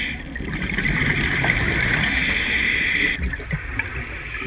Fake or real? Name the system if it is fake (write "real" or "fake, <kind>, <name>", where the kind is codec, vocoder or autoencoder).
real